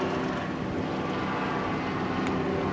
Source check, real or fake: real